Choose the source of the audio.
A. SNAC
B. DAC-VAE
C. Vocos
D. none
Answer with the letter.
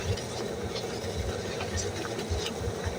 D